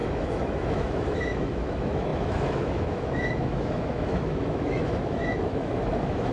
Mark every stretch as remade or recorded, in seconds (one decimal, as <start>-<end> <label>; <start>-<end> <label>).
0.0-6.3 remade